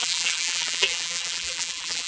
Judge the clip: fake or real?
fake